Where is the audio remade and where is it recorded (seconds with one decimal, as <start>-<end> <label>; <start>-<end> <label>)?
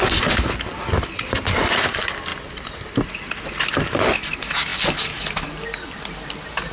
0.0-6.7 recorded